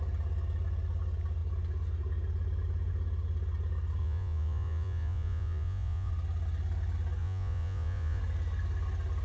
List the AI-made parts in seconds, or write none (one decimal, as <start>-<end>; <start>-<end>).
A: 4.0-6.1; 7.2-8.2